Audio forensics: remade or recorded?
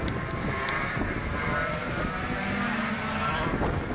recorded